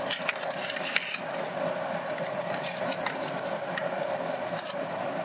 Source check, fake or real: real